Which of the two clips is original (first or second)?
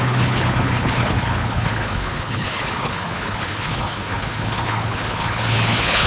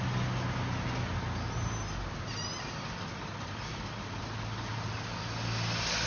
second